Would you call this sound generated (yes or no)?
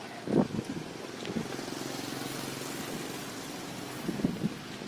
no